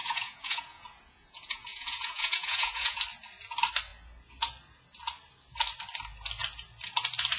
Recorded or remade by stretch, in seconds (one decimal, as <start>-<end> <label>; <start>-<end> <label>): 0.0-3.0 remade; 3.0-7.4 recorded